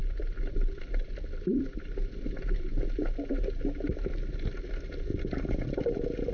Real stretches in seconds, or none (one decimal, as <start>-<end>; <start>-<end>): 2.7-6.3